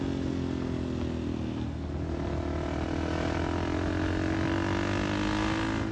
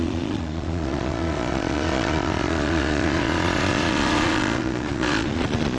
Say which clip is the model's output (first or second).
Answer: second